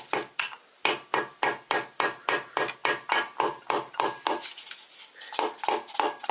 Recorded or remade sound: remade